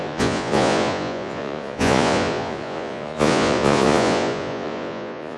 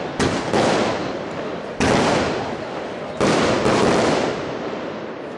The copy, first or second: first